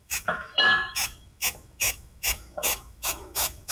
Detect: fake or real fake